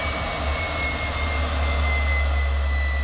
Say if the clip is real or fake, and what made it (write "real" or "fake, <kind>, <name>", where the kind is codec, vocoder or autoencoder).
real